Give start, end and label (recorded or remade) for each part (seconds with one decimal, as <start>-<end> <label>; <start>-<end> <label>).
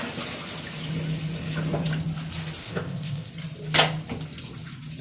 0.0-2.6 recorded; 2.6-3.3 remade; 3.3-5.0 recorded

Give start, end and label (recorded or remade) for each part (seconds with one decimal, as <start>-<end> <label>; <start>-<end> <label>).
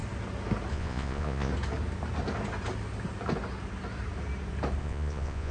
0.0-0.7 recorded; 0.7-1.5 remade; 1.5-4.8 recorded; 4.8-5.5 remade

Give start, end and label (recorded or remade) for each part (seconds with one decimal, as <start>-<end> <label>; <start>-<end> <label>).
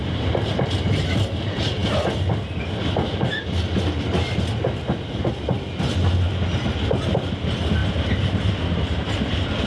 0.0-9.7 recorded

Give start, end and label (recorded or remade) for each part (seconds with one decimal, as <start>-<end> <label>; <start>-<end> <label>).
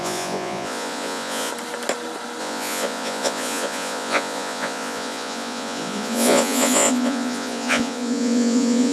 0.0-1.5 remade; 1.5-2.4 recorded; 2.4-8.9 remade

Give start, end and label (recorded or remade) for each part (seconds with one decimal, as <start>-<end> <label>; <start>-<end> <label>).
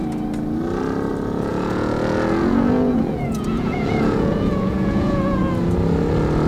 0.0-1.5 recorded; 1.5-5.4 remade; 5.4-6.5 recorded